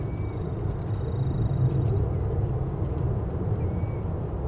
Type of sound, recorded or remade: recorded